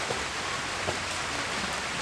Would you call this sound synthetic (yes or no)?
no